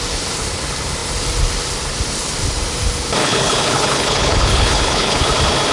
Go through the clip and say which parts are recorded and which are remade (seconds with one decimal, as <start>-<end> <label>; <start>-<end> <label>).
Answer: 0.0-3.2 recorded; 3.2-5.3 remade; 5.3-5.7 recorded